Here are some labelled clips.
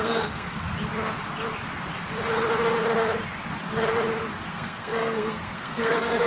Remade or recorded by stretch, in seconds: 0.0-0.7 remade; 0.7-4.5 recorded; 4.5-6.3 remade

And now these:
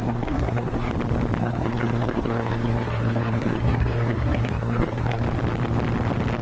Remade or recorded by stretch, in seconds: 0.0-0.9 remade; 0.9-1.4 recorded; 1.4-5.2 remade; 5.2-6.4 recorded

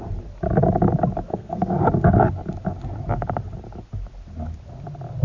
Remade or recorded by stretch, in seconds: 0.0-1.3 recorded; 1.3-1.8 remade; 1.8-5.2 recorded

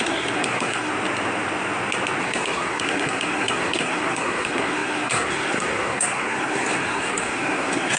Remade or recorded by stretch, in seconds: 0.0-0.9 remade; 0.9-2.2 recorded; 2.2-8.0 remade

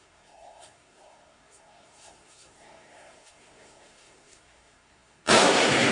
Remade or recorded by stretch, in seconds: 0.0-5.9 remade

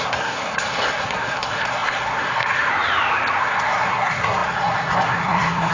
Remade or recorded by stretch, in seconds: 0.0-2.7 remade; 2.7-3.4 recorded; 3.4-5.7 remade